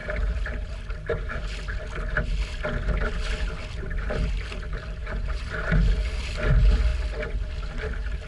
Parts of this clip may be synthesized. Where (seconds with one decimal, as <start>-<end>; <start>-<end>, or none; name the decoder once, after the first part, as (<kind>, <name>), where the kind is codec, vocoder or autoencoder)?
0.0-0.7 (vocoder, BigVGAN v2); 5.0-5.5